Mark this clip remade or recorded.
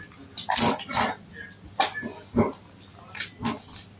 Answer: recorded